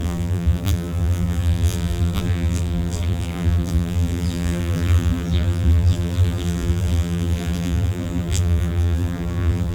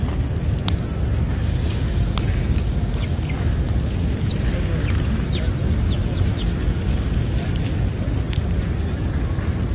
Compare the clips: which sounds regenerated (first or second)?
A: first